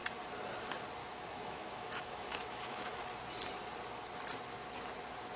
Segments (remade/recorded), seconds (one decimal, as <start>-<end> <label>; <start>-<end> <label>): 0.0-1.0 recorded; 1.0-3.1 remade; 3.1-5.4 recorded